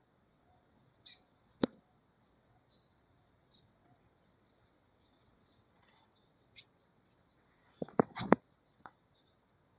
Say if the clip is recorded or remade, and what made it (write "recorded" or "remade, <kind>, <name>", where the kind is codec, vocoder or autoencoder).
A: remade, vocoder, WaveNeXt